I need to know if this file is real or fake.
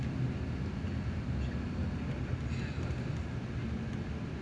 real